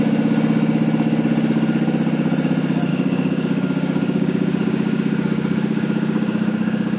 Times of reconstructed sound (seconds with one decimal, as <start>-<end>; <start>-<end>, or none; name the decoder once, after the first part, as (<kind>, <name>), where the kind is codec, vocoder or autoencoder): 2.9-7.0 (codec, DAC)